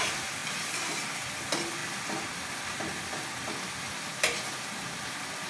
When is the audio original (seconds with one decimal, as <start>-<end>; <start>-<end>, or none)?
0.0-0.4; 0.9-5.5